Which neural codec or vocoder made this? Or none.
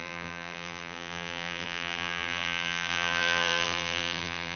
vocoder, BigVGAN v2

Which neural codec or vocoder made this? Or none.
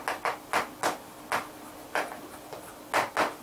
none